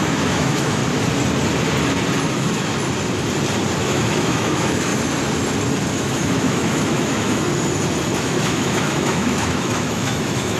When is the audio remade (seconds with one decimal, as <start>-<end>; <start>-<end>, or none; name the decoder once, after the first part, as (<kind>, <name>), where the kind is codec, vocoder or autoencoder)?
0.0-0.8 (autoencoder, DAC-VAE); 2.3-2.7; 3.8-4.9; 5.9-7.5; 8.2-10.6